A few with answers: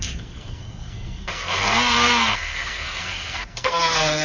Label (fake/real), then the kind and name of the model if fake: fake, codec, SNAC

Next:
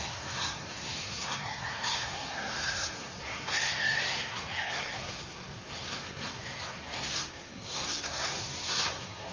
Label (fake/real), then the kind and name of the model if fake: fake, codec, SNAC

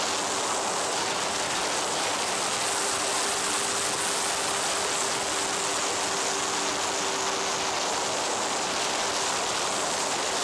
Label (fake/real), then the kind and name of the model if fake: real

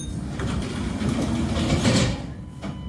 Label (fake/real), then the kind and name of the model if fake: real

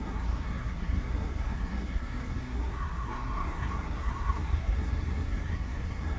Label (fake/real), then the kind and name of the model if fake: fake, codec, SNAC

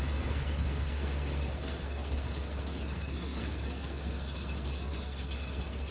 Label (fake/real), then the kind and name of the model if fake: fake, codec, SNAC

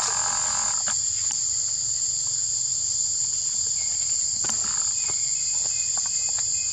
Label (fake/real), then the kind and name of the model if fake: real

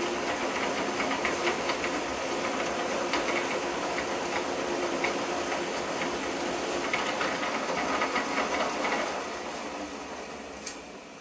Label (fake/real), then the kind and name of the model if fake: real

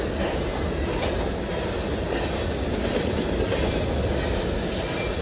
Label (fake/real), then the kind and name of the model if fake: real